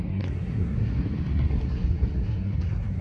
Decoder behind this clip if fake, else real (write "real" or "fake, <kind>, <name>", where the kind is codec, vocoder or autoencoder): fake, codec, SNAC